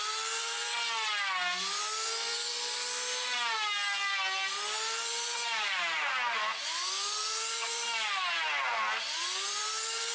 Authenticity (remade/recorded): recorded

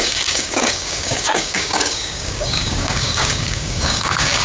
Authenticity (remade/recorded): remade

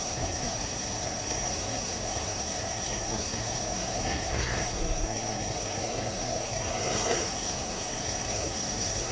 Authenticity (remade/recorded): remade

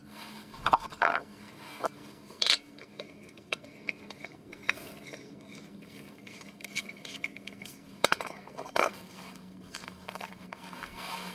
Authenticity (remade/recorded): remade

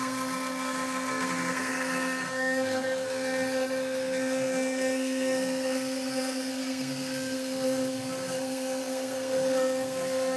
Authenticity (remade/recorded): remade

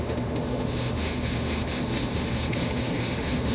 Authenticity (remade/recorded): remade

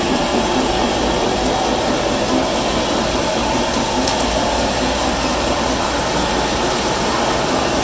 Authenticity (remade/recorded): recorded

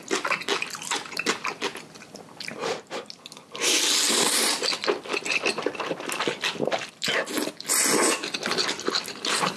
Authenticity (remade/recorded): recorded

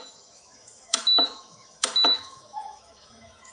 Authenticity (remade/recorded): remade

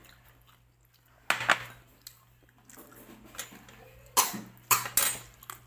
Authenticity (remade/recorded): recorded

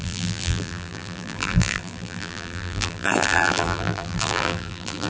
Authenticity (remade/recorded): remade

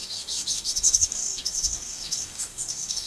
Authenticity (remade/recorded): remade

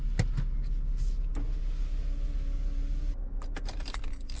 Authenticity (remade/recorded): recorded